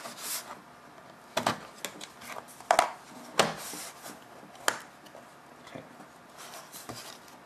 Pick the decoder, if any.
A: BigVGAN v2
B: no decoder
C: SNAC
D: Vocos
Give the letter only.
B